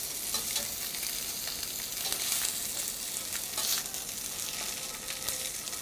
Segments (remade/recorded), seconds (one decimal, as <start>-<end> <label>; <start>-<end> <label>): 0.0-5.8 recorded